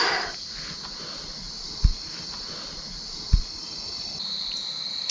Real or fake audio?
real